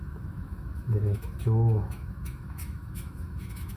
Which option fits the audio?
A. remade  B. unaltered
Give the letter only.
A